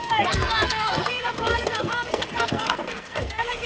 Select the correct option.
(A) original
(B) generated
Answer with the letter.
B